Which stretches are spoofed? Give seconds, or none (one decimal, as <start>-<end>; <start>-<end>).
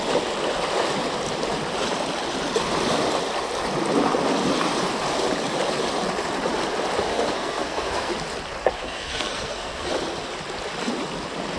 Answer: 7.1-8.1; 8.6-9.9